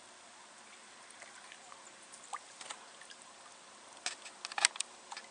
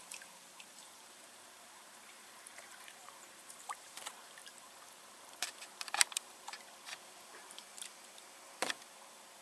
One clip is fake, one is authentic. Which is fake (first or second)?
second